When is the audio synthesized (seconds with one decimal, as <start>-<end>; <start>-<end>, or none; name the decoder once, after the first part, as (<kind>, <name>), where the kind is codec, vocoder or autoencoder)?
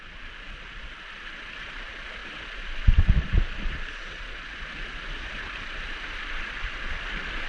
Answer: 0.0-2.2 (vocoder, BigVGAN v2); 5.4-7.5